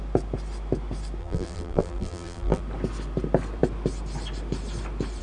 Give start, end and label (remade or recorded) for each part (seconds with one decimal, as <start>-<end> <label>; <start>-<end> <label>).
0.0-1.2 recorded; 1.2-2.6 remade; 2.6-5.2 recorded

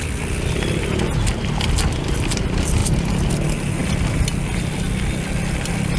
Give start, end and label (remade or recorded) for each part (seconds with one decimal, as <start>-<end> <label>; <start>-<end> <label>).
0.0-6.0 recorded

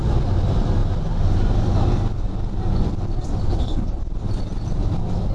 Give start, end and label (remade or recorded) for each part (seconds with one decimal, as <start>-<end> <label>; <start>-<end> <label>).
0.0-3.4 recorded; 3.4-4.0 remade; 4.0-5.3 recorded

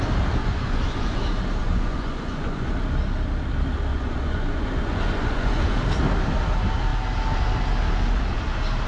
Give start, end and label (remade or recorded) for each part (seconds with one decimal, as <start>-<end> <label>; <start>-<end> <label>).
0.0-0.4 recorded; 0.4-1.2 remade; 1.2-1.6 recorded; 1.6-2.7 remade; 2.7-3.9 recorded; 3.9-5.7 remade; 5.7-8.9 recorded

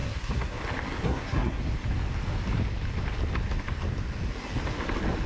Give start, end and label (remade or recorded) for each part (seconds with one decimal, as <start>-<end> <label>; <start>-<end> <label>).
0.0-0.6 remade; 0.6-1.0 recorded; 1.0-1.6 remade; 1.6-5.3 recorded

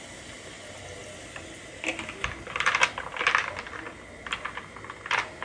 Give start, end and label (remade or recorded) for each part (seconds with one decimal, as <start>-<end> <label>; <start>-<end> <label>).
0.0-5.4 recorded

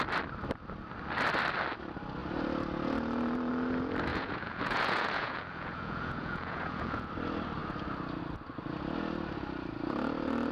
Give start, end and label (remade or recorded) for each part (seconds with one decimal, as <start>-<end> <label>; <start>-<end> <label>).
0.0-4.1 recorded; 4.1-7.1 remade; 7.1-10.5 recorded

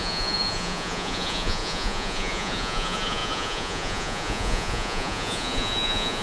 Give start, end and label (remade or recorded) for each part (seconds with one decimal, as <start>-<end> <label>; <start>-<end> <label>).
0.0-6.2 remade